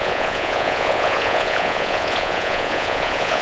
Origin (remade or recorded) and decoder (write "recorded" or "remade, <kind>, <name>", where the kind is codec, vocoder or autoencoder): remade, vocoder, Vocos